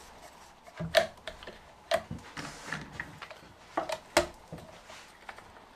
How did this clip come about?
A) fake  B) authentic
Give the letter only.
B